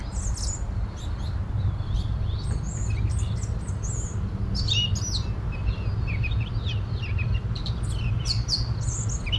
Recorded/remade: recorded